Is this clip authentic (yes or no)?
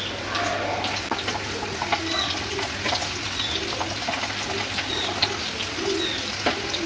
yes